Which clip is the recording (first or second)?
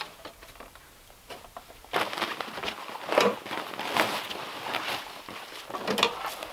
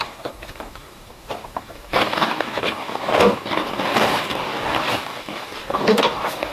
first